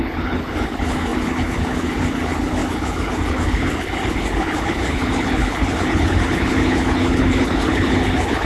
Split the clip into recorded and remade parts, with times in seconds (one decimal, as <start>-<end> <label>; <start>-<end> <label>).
0.0-8.5 remade